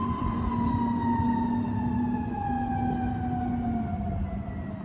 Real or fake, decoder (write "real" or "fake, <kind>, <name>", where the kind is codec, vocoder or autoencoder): real